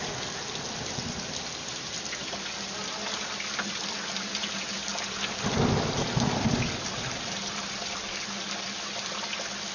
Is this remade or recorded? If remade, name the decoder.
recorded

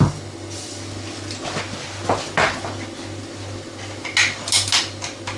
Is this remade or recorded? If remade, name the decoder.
recorded